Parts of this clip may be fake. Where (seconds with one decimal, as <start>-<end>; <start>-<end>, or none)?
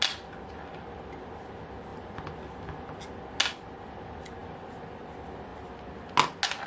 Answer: none